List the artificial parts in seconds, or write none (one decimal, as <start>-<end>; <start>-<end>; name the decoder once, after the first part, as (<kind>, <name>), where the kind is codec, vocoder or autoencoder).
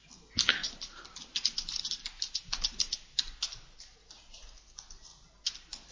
0.6-1.2 (vocoder, BigVGAN v2)